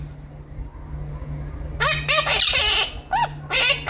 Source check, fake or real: real